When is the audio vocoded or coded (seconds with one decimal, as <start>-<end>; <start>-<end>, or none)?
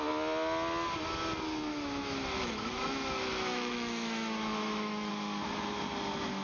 1.7-5.1